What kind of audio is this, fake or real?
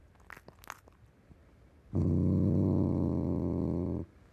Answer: real